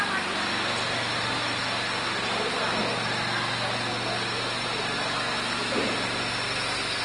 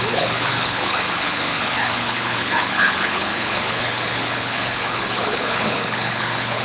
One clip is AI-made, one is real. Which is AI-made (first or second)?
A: second